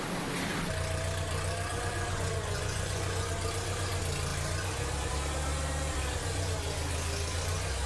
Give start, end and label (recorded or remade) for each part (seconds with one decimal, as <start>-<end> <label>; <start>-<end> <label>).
0.0-1.7 recorded; 1.7-3.3 remade; 3.3-7.9 recorded